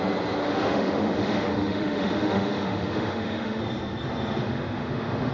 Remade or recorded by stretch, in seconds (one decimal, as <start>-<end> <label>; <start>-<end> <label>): 0.0-0.4 recorded; 0.4-3.6 remade; 3.6-4.4 recorded; 4.4-5.3 remade